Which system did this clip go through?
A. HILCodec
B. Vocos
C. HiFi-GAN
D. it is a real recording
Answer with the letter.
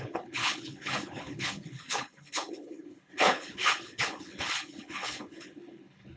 A